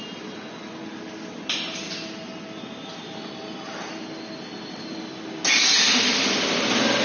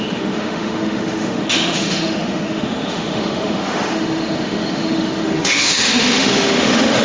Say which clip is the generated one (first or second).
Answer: second